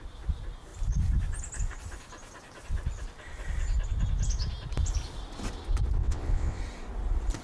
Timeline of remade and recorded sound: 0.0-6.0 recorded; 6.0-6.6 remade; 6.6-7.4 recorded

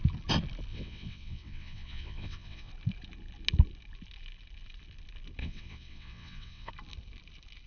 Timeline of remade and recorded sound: 0.0-0.7 recorded; 0.7-2.7 remade; 2.7-5.4 recorded; 5.4-6.7 remade; 6.7-7.7 recorded

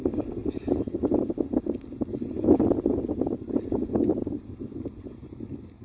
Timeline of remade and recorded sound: 0.0-5.8 recorded

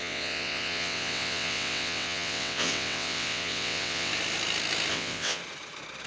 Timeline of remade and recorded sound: 0.0-4.1 remade; 4.1-4.9 recorded; 4.9-5.4 remade; 5.4-6.1 recorded

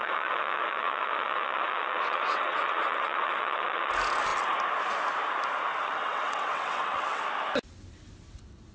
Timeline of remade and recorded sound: 0.0-3.9 remade; 3.9-5.7 recorded; 5.7-7.2 remade; 7.2-8.7 recorded